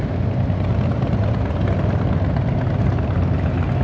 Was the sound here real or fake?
real